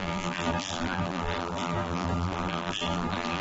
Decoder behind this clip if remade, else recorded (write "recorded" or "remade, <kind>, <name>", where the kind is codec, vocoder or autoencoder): remade, vocoder, BigVGAN v2